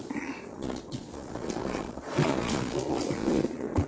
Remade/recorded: remade